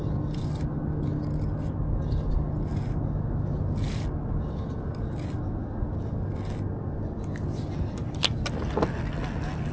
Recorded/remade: recorded